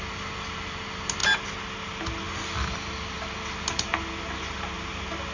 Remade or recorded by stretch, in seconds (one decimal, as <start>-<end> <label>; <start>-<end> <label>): 0.0-5.3 recorded